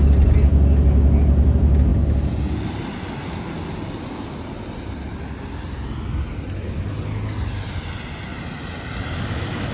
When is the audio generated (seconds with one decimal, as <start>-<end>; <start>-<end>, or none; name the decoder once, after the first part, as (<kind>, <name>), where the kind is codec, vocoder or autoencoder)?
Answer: none